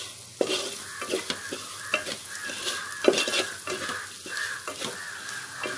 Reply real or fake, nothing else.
real